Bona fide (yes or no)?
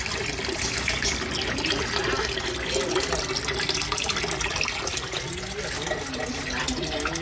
yes